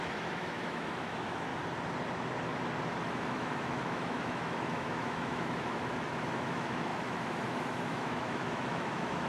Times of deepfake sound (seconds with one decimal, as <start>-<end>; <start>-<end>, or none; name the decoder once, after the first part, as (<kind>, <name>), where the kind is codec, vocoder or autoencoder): 0.0-1.5 (autoencoder, DAC-VAE); 3.0-9.3